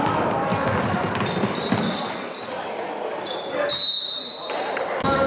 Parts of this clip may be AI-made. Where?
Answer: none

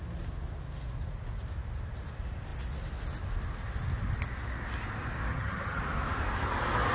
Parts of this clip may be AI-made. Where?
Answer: 5.3-5.8 (vocoder, HiFi-GAN)

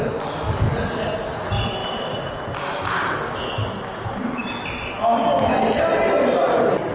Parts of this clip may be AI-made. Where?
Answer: none

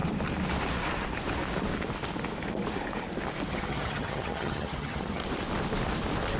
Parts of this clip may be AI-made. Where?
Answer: 3.5-5.2 (vocoder, HiFi-GAN)

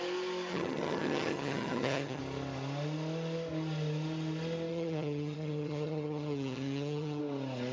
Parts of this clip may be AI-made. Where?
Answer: 0.5-2.2 (vocoder, HiFi-GAN); 4.7-7.2